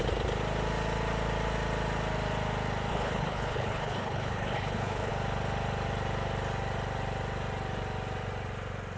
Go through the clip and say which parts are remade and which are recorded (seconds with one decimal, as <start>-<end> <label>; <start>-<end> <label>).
0.0-2.9 recorded; 2.9-5.1 remade; 5.1-9.0 recorded